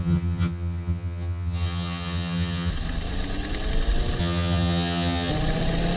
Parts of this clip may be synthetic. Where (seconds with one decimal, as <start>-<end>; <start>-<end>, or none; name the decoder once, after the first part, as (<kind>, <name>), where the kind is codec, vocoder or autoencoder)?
0.0-2.7 (vocoder, HiFi-GAN); 4.2-5.3